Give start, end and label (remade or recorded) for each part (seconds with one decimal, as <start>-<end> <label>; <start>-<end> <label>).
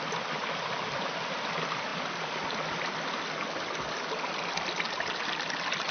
0.0-5.9 recorded